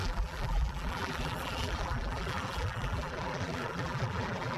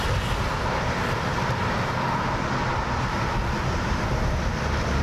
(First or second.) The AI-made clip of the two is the first